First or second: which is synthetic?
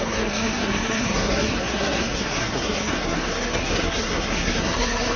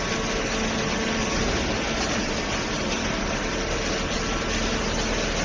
first